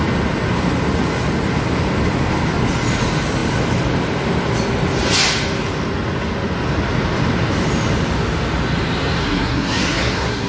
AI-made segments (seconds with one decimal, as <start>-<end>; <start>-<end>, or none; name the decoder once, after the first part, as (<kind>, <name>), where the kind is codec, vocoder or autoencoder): 9.2-10.5 (codec, SNAC)